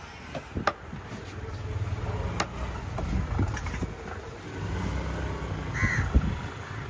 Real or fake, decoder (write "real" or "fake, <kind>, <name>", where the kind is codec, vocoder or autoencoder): real